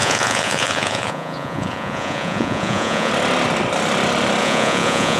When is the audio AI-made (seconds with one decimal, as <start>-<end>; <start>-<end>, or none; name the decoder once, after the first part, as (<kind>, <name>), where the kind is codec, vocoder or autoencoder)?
0.0-3.1 (vocoder, Vocos); 4.4-5.2